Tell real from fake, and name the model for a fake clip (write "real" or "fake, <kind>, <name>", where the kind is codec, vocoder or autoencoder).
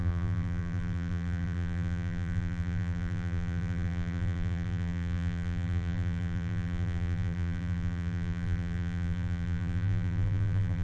fake, vocoder, BigVGAN v2